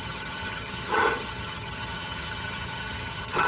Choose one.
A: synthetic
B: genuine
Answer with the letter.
A